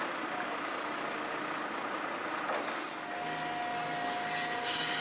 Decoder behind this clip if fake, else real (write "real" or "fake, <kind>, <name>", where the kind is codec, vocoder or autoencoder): real